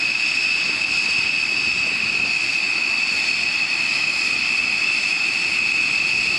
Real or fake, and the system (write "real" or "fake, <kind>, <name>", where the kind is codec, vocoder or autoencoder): real